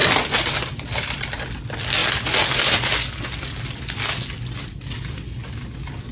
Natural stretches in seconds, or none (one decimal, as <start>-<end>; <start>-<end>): 0.0-6.1